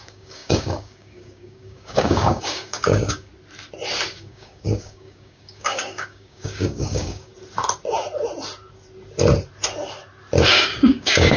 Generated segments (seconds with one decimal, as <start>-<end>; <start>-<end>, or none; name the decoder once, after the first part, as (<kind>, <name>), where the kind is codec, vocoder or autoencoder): 0.0-3.3 (codec, DAC); 4.1-7.3; 10.5-11.4